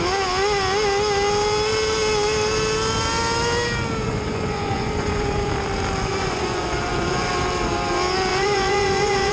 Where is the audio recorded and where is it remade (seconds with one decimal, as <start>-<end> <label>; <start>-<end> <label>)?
0.0-4.0 recorded; 4.0-5.5 remade; 5.5-6.1 recorded; 6.1-7.3 remade; 7.3-8.3 recorded; 8.3-9.3 remade